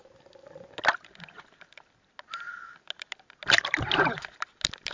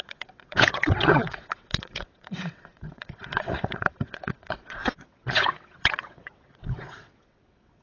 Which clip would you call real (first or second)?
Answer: first